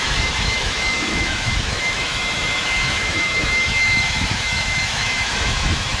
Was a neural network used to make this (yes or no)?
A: yes